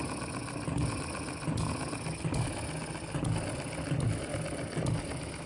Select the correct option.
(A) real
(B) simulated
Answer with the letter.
A